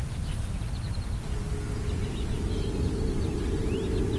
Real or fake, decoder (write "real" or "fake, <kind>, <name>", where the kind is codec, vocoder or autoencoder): real